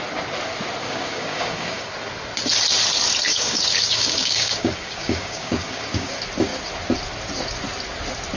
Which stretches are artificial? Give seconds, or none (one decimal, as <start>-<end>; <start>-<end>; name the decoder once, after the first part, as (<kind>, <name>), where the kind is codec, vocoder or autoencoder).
0.8-1.9 (codec, DAC); 3.3-6.1